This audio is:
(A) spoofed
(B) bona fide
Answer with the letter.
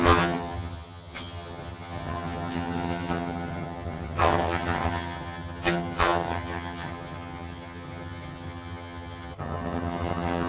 A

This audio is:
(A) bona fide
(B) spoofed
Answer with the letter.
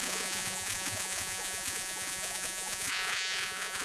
B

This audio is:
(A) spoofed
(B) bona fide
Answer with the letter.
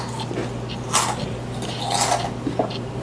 B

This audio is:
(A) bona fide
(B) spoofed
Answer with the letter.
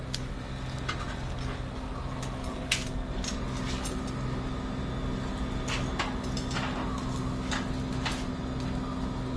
A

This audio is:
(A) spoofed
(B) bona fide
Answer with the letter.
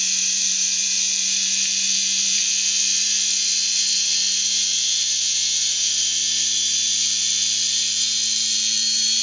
A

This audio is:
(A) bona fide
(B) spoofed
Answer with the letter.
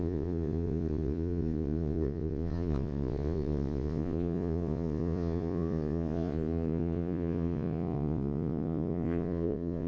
B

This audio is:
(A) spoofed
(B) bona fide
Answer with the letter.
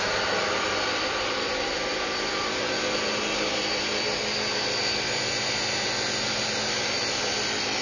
B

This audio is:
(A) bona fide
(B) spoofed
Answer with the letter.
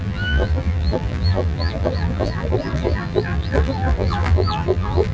B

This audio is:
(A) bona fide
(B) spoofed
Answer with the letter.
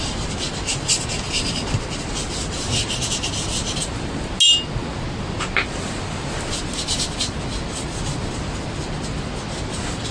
A